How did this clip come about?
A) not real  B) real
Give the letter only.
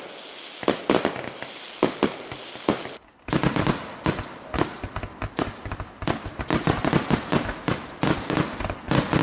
B